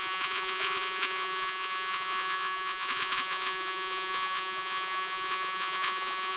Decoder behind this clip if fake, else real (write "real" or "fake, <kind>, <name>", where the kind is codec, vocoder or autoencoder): fake, vocoder, Vocos